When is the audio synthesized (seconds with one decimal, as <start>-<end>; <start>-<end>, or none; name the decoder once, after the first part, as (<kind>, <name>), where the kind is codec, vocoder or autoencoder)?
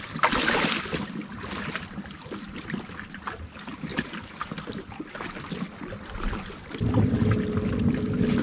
none